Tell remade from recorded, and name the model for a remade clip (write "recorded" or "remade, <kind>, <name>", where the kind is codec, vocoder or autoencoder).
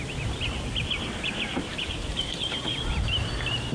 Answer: remade, vocoder, BigVGAN v2